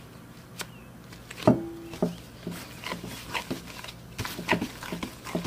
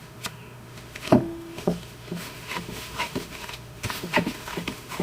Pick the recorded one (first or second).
first